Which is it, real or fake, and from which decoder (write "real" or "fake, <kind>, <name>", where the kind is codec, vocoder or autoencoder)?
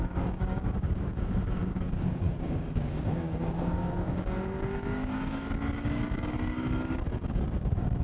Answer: fake, codec, DAC